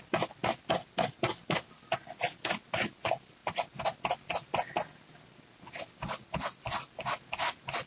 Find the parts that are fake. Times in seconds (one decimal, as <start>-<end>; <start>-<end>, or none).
none